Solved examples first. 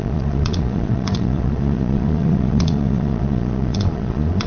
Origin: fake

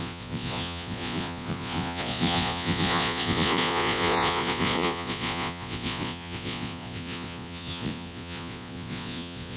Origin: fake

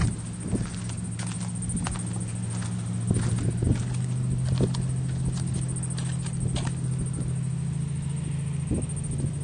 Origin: real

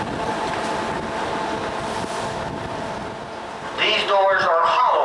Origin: real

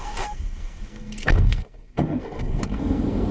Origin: fake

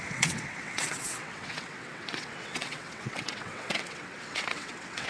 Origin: fake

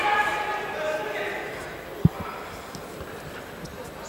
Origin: real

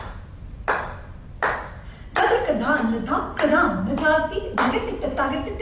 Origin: fake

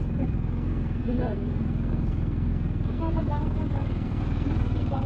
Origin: fake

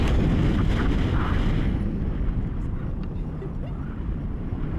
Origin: real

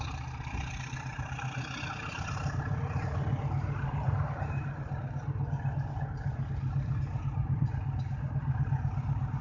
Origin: fake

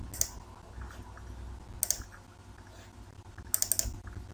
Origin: real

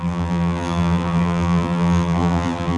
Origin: fake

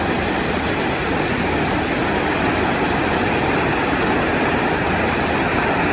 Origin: real